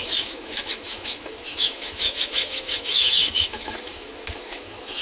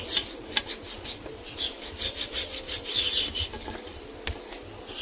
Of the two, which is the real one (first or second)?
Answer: second